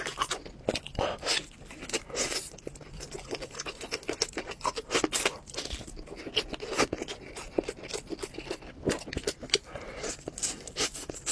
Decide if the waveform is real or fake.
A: real